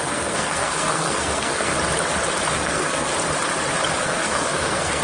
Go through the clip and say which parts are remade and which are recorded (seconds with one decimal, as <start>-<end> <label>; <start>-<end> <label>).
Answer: 0.0-1.7 remade; 1.7-2.5 recorded; 2.5-3.1 remade; 3.1-4.0 recorded; 4.0-5.0 remade

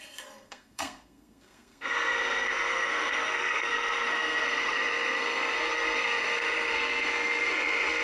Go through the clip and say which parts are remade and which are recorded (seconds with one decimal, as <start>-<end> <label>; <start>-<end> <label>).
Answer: 0.0-8.0 remade

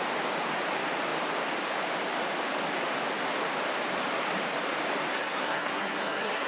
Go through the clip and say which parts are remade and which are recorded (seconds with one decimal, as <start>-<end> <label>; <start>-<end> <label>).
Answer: 0.0-5.1 recorded; 5.1-6.5 remade